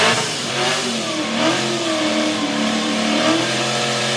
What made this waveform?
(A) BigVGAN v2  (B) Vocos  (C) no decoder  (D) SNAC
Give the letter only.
A